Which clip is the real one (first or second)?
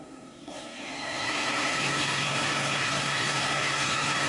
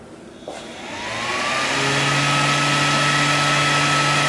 second